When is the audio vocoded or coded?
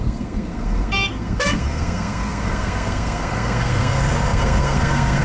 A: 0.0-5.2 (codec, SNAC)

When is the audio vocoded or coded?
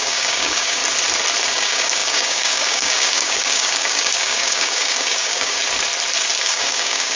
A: 0.0-0.8 (codec, DAC); 1.5-5.6; 6.4-7.2